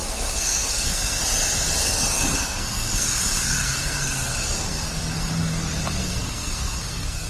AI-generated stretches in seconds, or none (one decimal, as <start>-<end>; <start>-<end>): 0.0-1.2; 1.8-5.3; 6.0-7.3